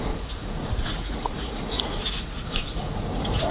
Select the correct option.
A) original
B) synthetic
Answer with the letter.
B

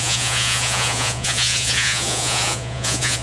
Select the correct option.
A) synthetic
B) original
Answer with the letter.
A